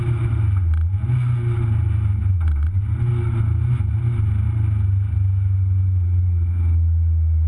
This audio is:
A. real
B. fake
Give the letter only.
A